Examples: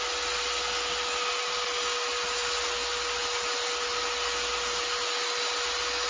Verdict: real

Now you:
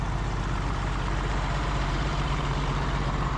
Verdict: fake